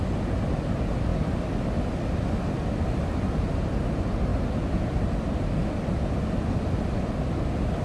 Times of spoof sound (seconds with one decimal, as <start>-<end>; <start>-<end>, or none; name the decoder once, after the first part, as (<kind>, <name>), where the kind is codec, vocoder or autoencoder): none